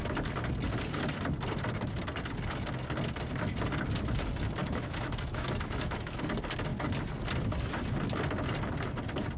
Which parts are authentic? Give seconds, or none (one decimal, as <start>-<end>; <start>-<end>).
0.0-4.6; 6.2-9.4